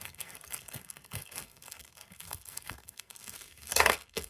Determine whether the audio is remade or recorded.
remade